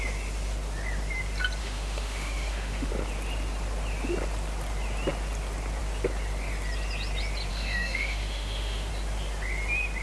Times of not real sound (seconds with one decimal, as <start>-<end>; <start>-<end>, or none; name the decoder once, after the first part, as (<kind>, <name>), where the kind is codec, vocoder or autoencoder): 1.6-2.9 (autoencoder, DAC-VAE); 7.5-8.9